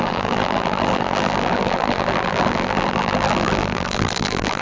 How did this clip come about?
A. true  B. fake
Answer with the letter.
B